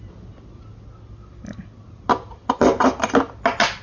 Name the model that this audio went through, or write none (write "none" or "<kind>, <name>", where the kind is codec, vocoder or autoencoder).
none